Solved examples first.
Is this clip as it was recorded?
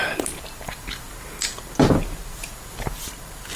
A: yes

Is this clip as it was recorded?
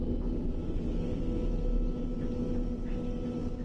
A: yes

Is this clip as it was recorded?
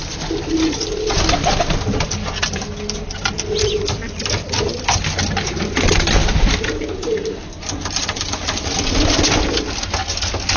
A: yes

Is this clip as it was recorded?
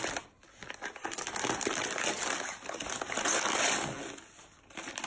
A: yes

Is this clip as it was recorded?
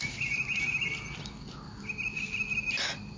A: yes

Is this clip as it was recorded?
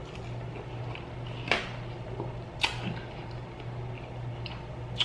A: yes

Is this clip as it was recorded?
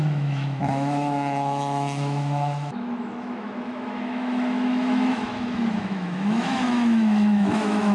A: no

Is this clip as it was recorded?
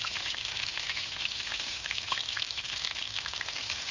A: no